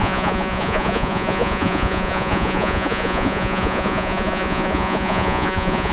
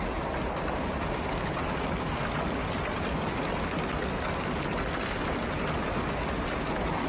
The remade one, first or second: first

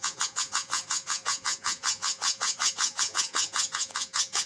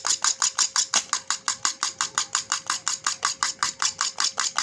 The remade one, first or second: first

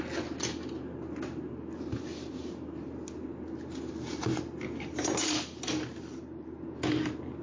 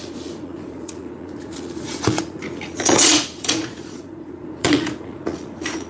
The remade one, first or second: second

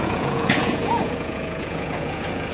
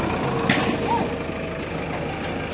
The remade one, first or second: first